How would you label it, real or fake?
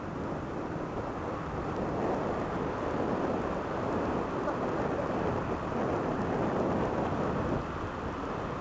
real